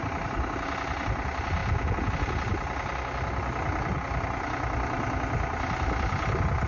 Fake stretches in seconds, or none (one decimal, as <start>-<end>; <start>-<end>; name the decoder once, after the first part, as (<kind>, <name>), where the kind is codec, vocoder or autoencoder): none